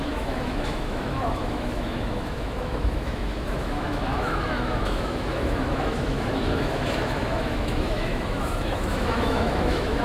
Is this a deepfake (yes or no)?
yes